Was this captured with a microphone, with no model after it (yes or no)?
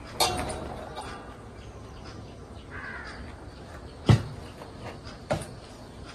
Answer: yes